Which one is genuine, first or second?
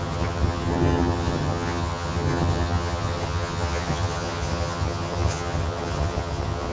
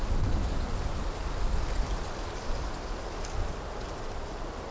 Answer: second